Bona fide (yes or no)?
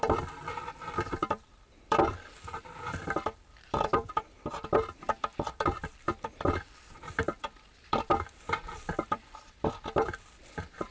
no